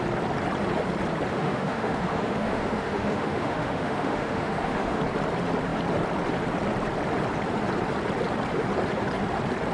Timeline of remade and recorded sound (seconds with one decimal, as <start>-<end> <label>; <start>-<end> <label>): 0.0-1.3 recorded; 1.3-5.0 remade; 5.0-9.7 recorded

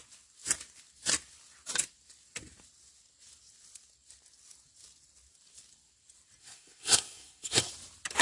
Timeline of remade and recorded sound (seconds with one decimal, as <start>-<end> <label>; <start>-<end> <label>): 0.0-6.4 recorded; 6.4-7.7 remade; 7.7-8.2 recorded

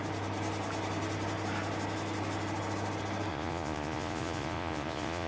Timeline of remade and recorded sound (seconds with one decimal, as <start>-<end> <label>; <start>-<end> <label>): 0.0-3.3 recorded; 3.3-5.3 remade

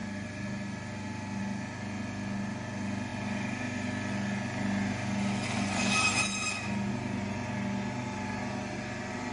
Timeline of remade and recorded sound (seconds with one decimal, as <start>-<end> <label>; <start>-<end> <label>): 0.0-9.3 recorded

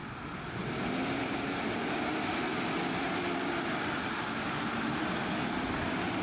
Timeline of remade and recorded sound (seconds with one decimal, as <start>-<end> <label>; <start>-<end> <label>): 0.0-6.2 remade

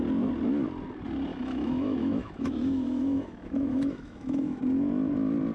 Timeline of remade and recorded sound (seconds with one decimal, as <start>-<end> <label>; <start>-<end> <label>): 0.0-1.3 recorded; 1.3-4.6 remade; 4.6-5.5 recorded